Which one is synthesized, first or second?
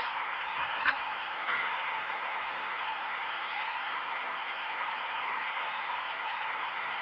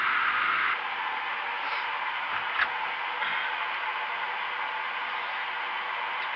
first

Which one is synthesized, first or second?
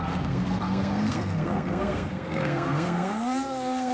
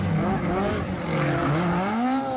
first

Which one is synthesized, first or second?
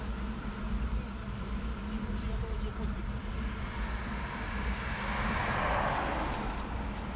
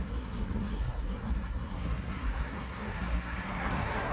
second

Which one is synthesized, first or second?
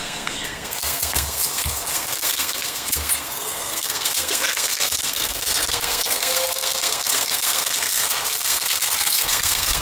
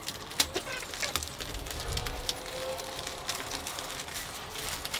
first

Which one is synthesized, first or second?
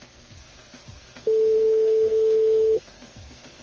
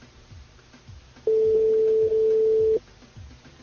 first